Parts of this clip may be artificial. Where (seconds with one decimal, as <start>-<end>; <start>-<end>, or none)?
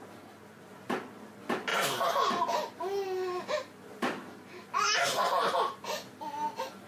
none